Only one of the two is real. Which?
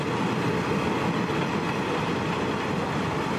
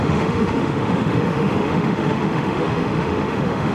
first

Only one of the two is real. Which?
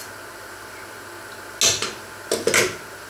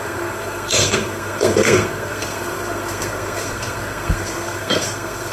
first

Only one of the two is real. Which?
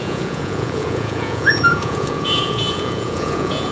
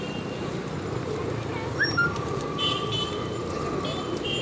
second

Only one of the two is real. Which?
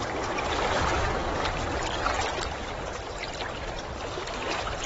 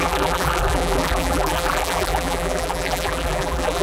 first